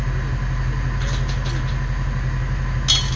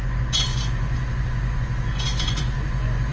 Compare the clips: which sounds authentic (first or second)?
first